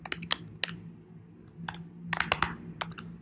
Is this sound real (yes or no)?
yes